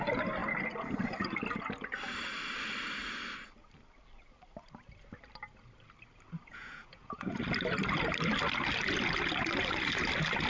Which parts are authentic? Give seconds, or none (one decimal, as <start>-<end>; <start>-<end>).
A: 0.0-6.5; 7.4-10.5